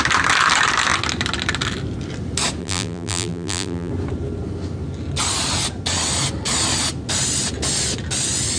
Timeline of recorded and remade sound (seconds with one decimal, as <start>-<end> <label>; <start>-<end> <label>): 0.0-2.6 recorded; 2.6-3.9 remade; 3.9-8.6 recorded